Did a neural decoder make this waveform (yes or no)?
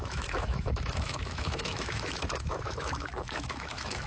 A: yes